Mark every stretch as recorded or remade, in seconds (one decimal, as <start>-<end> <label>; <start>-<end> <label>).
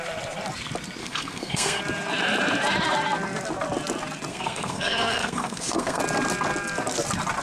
0.0-1.0 recorded; 1.0-1.8 remade; 1.8-4.3 recorded; 4.3-6.0 remade; 6.0-7.4 recorded